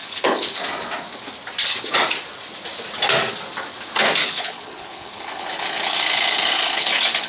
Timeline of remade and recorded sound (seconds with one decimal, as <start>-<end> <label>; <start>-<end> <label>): 0.0-0.6 remade; 0.6-4.2 recorded; 4.2-7.3 remade

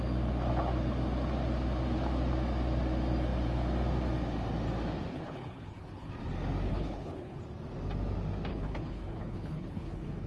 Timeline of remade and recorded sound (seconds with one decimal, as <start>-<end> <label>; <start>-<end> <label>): 0.0-5.1 recorded; 5.1-6.1 remade; 6.1-6.7 recorded; 6.7-7.4 remade; 7.4-8.5 recorded; 8.5-10.3 remade

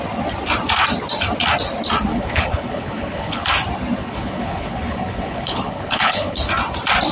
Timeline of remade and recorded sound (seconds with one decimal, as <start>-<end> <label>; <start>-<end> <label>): 0.0-2.1 recorded; 2.1-3.4 remade; 3.4-4.0 recorded; 4.0-6.5 remade; 6.5-7.1 recorded

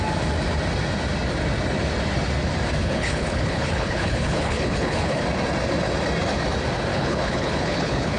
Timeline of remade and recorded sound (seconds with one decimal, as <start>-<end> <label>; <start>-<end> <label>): 0.0-2.8 recorded; 2.8-5.2 remade; 5.2-6.9 recorded; 6.9-8.2 remade

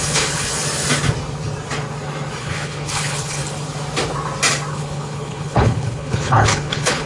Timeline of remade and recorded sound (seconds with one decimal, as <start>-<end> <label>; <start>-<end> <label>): 0.0-0.5 remade; 0.5-2.4 recorded; 2.4-3.4 remade; 3.4-4.7 recorded; 4.7-7.1 remade